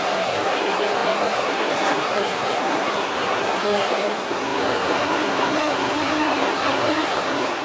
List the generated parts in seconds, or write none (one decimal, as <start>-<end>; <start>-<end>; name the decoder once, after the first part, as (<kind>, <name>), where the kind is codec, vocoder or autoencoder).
0.0-7.6 (codec, SNAC)